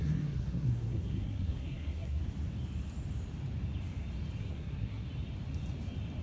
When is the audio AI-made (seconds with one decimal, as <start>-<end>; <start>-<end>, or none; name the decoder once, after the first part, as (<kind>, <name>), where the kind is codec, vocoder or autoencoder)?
0.0-2.2 (codec, SNAC); 4.4-5.1